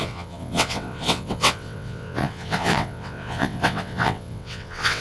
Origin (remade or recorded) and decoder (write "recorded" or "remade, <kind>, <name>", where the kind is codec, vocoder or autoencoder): remade, vocoder, WaveNeXt